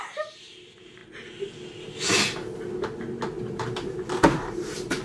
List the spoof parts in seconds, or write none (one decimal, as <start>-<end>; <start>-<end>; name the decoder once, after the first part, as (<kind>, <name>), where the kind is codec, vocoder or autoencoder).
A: 0.0-1.0 (vocoder, BigVGAN v2); 3.5-5.0